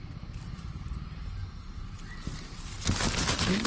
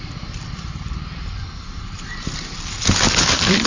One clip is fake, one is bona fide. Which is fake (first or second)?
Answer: second